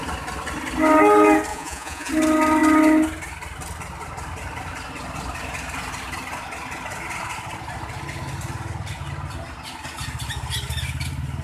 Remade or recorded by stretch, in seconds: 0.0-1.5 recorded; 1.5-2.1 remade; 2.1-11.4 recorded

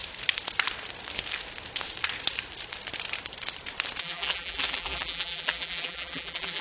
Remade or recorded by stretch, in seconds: 0.0-4.0 recorded; 4.0-6.6 remade

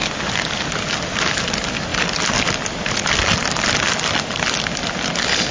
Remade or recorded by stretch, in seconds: 0.0-1.3 remade; 1.3-1.9 recorded; 1.9-3.1 remade; 3.1-5.5 recorded

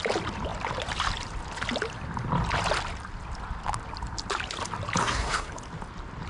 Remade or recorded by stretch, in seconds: 0.0-5.0 recorded; 5.0-5.5 remade; 5.5-6.3 recorded